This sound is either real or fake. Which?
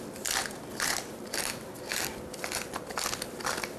real